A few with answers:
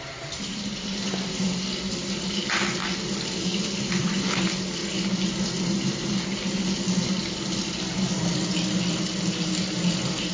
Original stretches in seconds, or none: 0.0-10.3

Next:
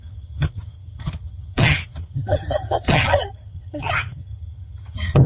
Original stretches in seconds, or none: none

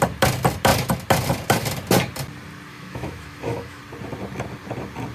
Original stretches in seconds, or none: 0.0-2.7; 3.8-5.1

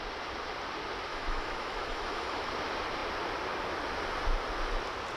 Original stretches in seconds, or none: 0.0-1.1; 2.5-5.2

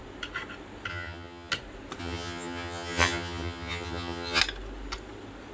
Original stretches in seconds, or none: 0.0-0.9; 1.5-2.0; 4.4-5.5